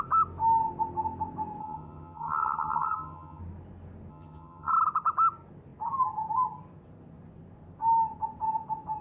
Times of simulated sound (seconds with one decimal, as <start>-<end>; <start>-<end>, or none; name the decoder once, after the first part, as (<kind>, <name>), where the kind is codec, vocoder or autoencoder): 1.6-3.4 (vocoder, HiFi-GAN); 4.1-4.7